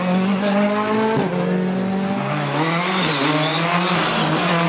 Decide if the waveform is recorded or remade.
recorded